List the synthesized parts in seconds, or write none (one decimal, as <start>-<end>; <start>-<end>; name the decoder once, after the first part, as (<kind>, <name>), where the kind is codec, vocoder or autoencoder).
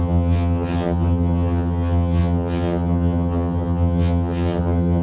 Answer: 0.0-5.0 (vocoder, HiFi-GAN)